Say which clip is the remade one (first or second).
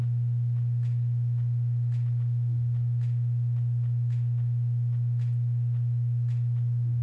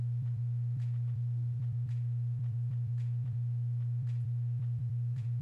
second